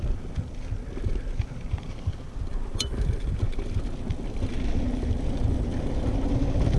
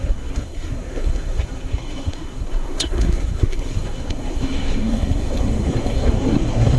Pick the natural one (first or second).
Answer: first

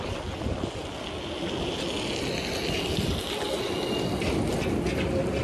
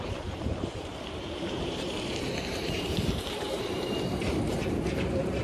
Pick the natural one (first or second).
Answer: first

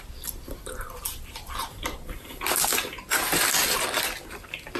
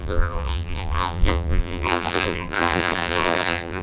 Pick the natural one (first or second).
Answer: first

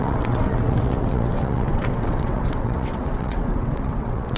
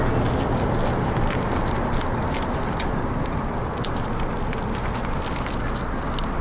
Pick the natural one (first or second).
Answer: second